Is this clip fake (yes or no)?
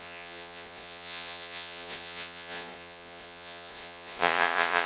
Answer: yes